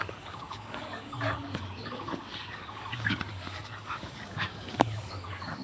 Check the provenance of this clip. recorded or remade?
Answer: remade